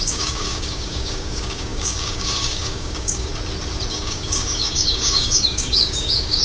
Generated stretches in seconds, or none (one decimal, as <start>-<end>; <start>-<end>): 0.0-3.3; 3.9-6.4